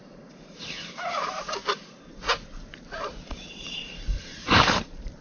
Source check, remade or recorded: remade